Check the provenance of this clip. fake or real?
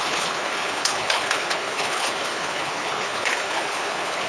fake